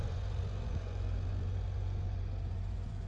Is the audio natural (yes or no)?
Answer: no